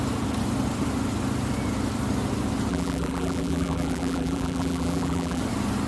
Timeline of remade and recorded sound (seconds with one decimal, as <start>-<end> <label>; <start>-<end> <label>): 0.0-2.7 recorded; 2.7-5.4 remade; 5.4-5.9 recorded